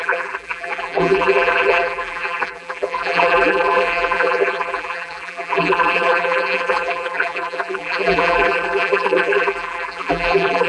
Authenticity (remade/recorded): remade